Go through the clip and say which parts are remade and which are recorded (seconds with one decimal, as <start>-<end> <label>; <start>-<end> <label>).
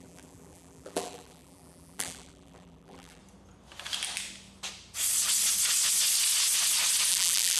0.0-3.2 remade; 3.2-7.1 recorded; 7.1-7.6 remade